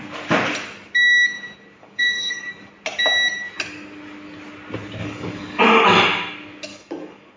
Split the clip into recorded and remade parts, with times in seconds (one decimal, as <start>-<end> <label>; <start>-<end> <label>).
0.0-1.8 recorded; 1.8-2.7 remade; 2.7-5.0 recorded; 5.0-5.6 remade; 5.6-6.7 recorded; 6.7-7.4 remade